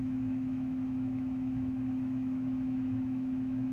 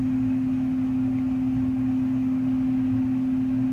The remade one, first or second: first